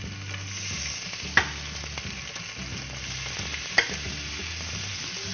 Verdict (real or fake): real